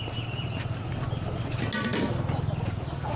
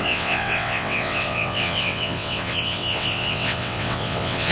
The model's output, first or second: second